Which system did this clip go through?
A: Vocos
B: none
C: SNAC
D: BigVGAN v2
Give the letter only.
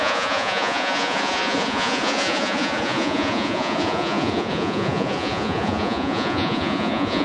A